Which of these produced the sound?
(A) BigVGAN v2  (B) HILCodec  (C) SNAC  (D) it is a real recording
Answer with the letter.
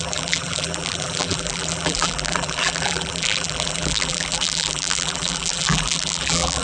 A